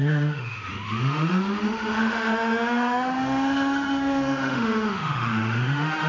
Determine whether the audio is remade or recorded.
remade